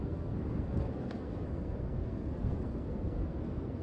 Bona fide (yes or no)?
no